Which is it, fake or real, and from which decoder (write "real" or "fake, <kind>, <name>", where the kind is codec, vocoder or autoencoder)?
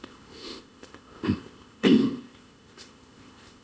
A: fake, codec, ZipCodec